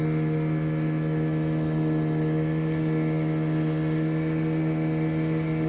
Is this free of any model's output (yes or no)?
yes